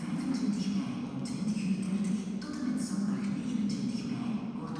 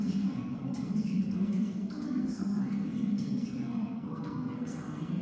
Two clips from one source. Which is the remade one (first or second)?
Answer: second